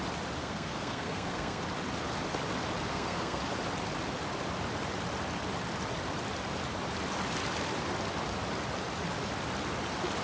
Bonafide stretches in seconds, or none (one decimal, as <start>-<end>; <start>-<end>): 0.0-0.4; 1.6-2.9; 3.4-10.2